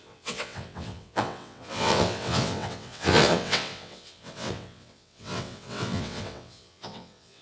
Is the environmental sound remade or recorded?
remade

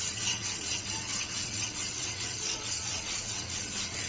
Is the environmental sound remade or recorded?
remade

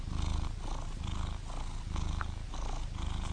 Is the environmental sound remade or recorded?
recorded